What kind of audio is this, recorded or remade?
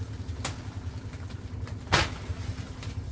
recorded